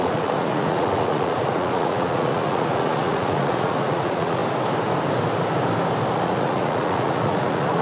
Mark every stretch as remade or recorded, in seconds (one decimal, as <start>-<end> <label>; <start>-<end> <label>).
0.0-4.4 remade; 4.4-6.1 recorded; 6.1-7.8 remade